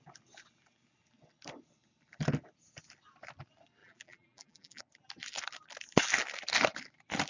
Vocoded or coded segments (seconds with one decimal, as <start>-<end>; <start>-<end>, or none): 3.8-4.8